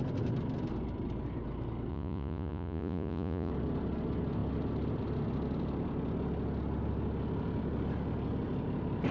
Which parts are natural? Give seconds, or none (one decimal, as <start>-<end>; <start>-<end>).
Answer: 0.0-1.9; 3.5-9.1